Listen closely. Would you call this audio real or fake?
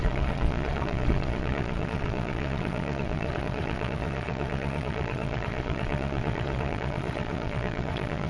fake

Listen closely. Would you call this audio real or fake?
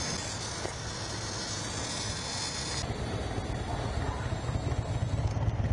real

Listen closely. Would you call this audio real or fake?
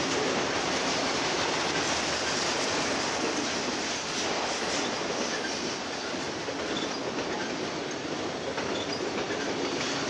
real